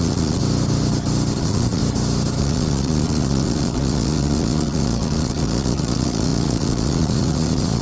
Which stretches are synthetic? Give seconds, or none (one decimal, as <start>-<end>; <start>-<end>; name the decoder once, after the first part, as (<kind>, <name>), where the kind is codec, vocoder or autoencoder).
0.0-0.4 (vocoder, Vocos); 1.4-1.8; 2.4-7.8